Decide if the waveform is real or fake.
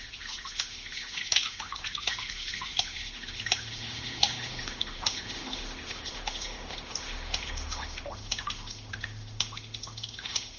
fake